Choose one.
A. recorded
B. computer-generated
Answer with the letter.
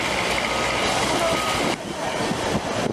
A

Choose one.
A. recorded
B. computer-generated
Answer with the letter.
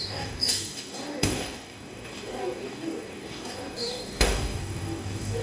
B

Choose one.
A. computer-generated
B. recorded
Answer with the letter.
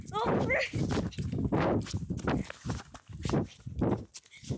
B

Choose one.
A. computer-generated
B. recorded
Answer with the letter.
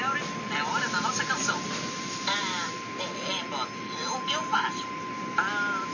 B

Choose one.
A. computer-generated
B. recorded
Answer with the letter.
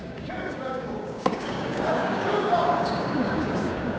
A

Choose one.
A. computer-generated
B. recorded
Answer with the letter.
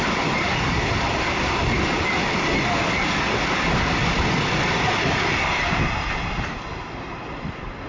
B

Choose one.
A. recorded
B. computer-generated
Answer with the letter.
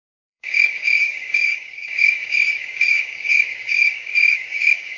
B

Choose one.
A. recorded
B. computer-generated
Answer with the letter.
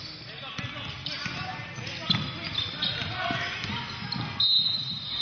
A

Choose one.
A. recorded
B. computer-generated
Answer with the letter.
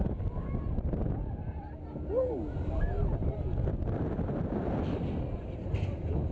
A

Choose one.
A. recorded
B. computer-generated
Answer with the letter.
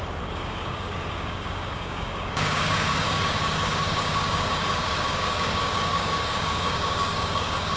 B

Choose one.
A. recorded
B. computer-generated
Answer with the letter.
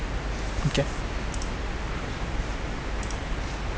A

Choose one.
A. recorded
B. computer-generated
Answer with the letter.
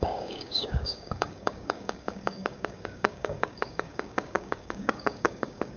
B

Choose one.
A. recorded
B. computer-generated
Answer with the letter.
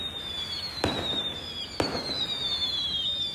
A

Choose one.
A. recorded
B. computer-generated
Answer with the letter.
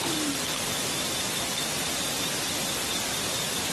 A